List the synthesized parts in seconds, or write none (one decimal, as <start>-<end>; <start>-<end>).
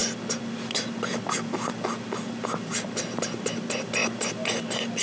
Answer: none